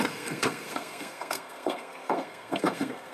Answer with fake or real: fake